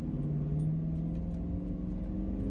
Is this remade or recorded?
recorded